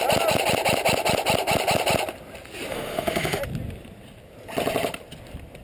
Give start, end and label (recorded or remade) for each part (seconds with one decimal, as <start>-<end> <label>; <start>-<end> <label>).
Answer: 0.0-2.7 recorded; 2.7-3.4 remade; 3.4-5.6 recorded